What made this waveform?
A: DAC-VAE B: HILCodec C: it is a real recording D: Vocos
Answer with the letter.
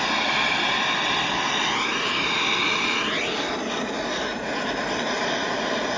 C